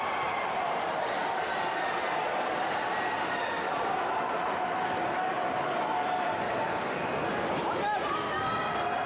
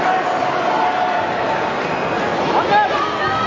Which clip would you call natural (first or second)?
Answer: second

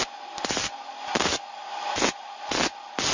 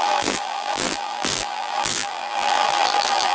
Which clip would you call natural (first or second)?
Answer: first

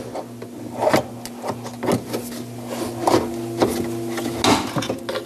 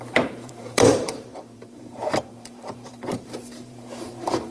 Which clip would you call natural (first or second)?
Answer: first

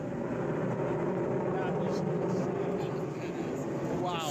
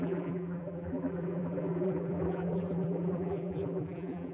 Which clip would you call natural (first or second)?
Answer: first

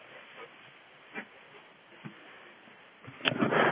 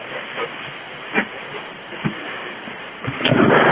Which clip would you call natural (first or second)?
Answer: first